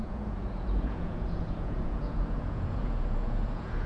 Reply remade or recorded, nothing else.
remade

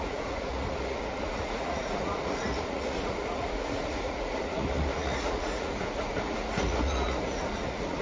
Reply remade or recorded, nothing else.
remade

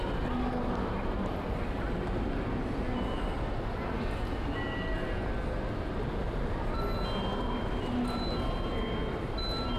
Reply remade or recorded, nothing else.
recorded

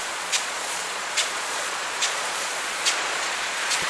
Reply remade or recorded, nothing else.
remade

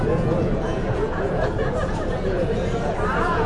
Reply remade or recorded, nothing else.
remade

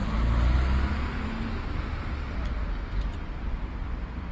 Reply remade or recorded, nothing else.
recorded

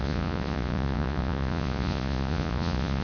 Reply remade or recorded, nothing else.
remade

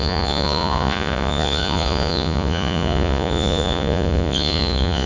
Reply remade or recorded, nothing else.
remade